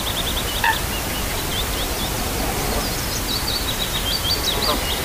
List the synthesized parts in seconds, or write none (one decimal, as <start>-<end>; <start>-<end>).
none